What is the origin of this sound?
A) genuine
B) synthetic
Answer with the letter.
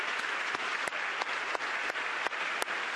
A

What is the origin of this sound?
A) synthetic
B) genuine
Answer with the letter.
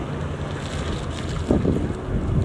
B